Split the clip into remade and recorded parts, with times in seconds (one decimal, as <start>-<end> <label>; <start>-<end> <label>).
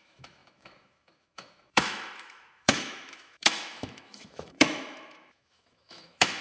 0.0-6.4 remade